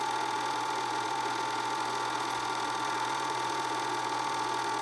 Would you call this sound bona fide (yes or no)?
no